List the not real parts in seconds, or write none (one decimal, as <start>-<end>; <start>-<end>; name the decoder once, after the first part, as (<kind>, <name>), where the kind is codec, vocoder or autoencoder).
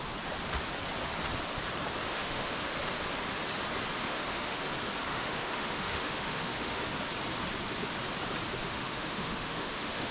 2.1-2.8 (autoencoder, DAC-VAE); 4.0-4.6; 5.1-6.8; 8.6-10.1